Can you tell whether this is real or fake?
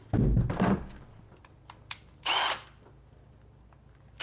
real